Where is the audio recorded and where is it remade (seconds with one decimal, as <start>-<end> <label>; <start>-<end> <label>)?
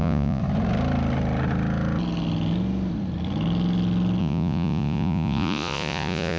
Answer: 0.0-0.4 remade; 0.4-4.2 recorded; 4.2-6.4 remade